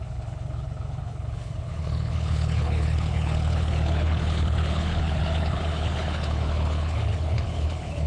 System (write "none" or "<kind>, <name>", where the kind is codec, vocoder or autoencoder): codec, HILCodec